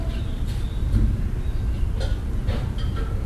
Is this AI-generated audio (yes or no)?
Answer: no